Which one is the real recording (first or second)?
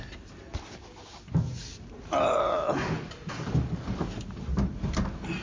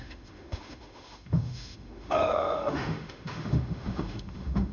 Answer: first